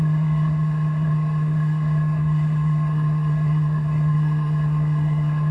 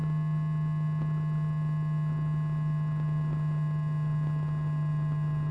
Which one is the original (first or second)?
second